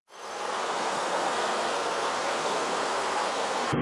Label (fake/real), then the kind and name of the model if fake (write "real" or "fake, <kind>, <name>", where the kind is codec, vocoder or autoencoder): fake, codec, SNAC